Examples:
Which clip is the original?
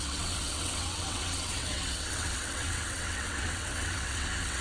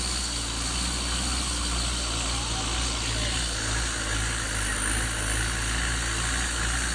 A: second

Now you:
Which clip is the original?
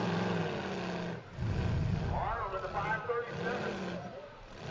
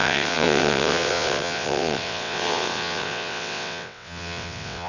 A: first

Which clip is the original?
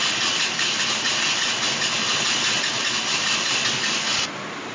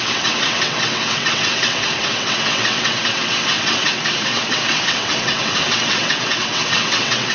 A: first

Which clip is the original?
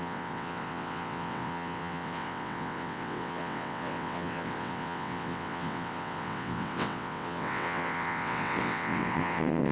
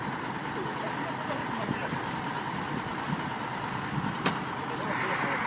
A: second